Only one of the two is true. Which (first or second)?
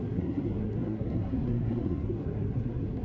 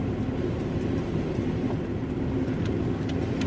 second